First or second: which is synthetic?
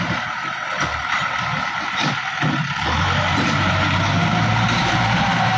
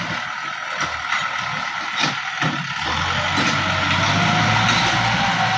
first